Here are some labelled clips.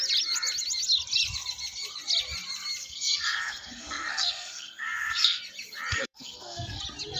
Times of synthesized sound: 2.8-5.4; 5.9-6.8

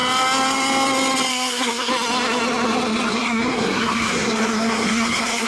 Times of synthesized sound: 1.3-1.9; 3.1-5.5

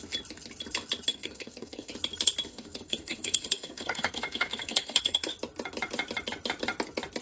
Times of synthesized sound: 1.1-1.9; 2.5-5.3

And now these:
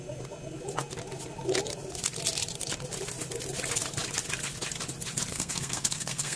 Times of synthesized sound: 5.3-6.4

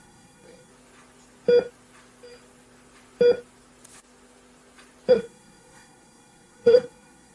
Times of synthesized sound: 0.0-0.7; 5.1-7.3

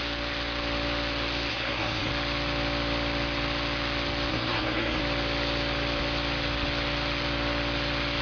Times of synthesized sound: 1.5-2.1; 4.3-5.0

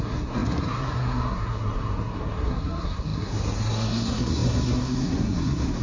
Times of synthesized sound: 0.0-5.8